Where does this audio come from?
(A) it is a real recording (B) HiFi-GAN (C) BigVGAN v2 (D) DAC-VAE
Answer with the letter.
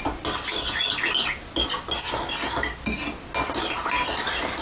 A